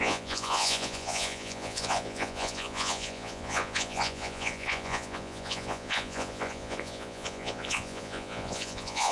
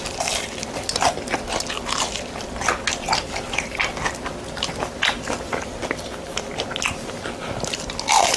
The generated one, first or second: first